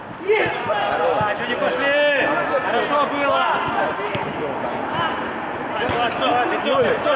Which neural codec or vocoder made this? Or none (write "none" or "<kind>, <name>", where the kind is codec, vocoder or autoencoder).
none